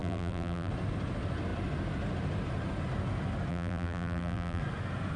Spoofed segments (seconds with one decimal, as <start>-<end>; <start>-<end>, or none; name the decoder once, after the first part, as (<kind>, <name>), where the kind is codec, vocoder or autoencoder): 0.0-0.7 (vocoder, BigVGAN v2); 3.5-4.6